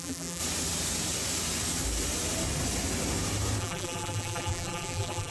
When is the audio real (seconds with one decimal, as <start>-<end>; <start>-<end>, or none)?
0.4-3.6